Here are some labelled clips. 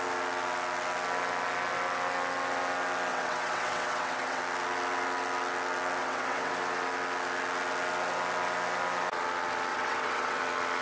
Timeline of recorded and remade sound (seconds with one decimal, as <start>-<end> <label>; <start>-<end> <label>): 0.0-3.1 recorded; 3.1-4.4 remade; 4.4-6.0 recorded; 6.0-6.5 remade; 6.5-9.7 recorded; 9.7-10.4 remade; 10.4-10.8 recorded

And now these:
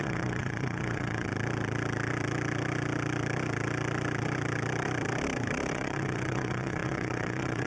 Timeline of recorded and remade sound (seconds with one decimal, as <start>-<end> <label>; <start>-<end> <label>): 0.0-1.3 remade; 1.3-5.7 recorded; 5.7-7.7 remade

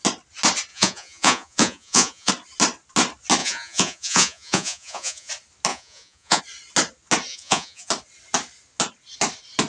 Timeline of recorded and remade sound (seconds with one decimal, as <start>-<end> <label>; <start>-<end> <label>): 0.0-0.7 recorded; 0.7-2.3 remade; 2.3-3.4 recorded; 3.4-5.3 remade; 5.3-5.7 recorded; 5.7-6.4 remade; 6.4-7.3 recorded; 7.3-7.9 remade; 7.9-9.7 recorded

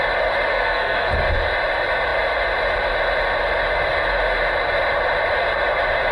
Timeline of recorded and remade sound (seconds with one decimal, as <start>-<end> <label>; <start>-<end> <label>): 0.0-0.5 recorded; 0.5-1.1 remade; 1.1-6.1 recorded

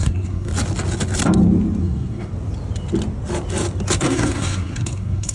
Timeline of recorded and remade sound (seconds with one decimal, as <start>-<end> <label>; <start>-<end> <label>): 0.0-0.5 remade; 0.5-1.8 recorded; 1.8-2.3 remade; 2.3-4.0 recorded; 4.0-5.3 remade

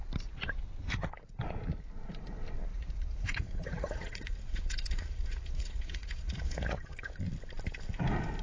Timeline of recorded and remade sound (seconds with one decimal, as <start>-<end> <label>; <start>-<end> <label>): 0.0-2.7 recorded; 2.7-7.2 remade; 7.2-8.4 recorded